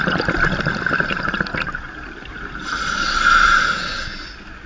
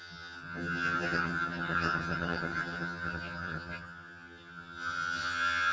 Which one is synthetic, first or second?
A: second